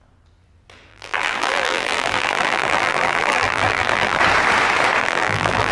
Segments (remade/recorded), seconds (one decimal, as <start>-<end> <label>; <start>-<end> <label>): 0.0-0.9 recorded; 0.9-4.2 remade; 4.2-5.0 recorded; 5.0-5.7 remade